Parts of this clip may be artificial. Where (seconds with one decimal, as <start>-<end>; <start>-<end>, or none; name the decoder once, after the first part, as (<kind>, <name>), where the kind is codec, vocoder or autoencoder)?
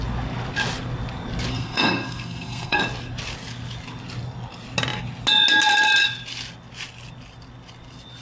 1.5-2.8 (codec, SNAC)